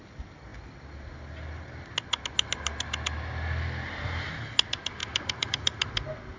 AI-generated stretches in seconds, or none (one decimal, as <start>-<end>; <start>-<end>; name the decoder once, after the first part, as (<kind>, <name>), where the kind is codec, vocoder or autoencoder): none